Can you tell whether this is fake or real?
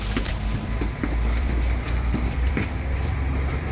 fake